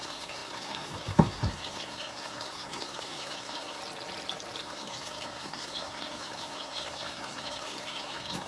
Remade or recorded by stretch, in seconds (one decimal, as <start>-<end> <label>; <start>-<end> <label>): 0.0-3.8 remade; 3.8-4.6 recorded; 4.6-8.5 remade